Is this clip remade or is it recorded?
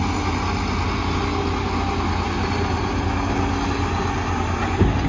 recorded